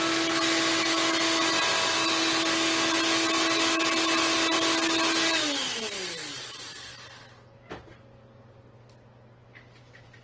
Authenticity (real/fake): real